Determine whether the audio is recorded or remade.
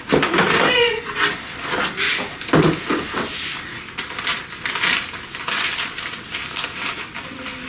recorded